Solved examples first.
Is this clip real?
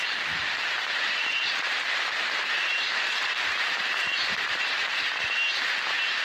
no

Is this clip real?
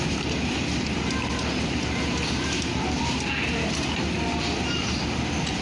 yes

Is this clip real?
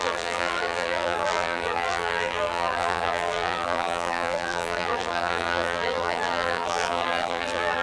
no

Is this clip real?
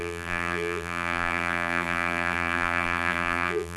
no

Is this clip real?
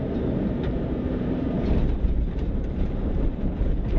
no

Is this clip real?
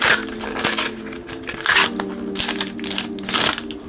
yes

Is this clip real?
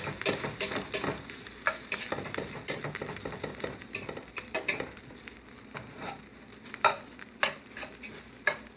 no